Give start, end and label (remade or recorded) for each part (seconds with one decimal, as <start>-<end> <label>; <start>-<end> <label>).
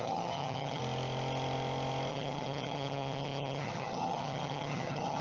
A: 0.0-0.8 remade; 0.8-2.1 recorded; 2.1-5.2 remade